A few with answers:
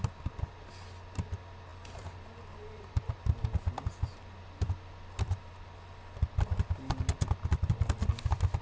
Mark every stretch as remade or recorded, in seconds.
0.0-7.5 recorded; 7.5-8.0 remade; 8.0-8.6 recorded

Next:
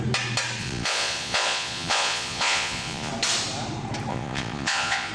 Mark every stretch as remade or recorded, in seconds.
0.0-0.6 recorded; 0.6-3.1 remade; 3.1-4.1 recorded; 4.1-5.1 remade

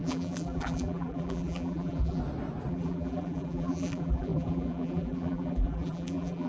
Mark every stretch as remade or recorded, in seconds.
0.0-2.2 remade; 2.2-2.7 recorded; 2.7-6.5 remade